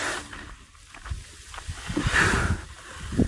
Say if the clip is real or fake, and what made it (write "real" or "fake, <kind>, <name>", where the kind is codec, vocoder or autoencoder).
real